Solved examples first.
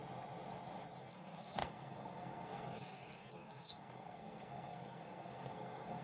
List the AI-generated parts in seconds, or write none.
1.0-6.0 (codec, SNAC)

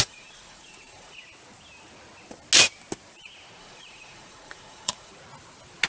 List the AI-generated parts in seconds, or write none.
0.0-1.2 (vocoder, Vocos); 3.6-5.1